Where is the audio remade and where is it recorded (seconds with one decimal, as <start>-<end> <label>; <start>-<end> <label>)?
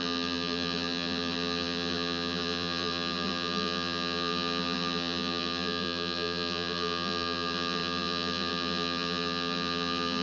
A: 0.0-10.2 remade